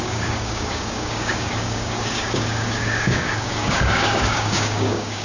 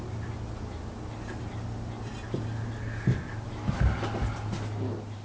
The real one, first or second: second